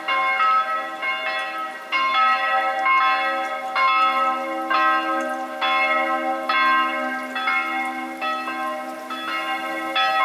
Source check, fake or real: real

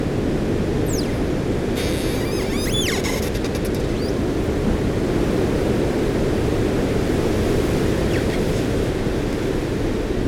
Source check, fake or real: real